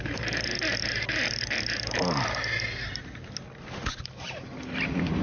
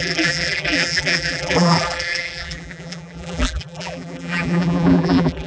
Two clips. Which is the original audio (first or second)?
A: first